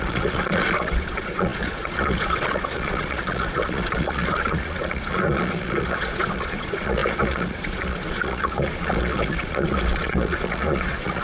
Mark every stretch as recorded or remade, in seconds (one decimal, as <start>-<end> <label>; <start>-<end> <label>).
0.0-11.2 remade